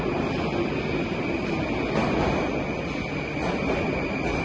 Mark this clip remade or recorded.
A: recorded